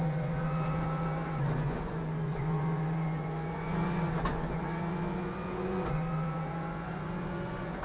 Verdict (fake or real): fake